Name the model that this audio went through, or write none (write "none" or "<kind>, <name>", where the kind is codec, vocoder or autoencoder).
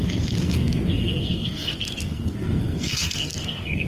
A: codec, SNAC